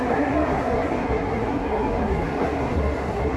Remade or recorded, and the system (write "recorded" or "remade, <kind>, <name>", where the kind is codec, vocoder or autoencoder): remade, codec, SNAC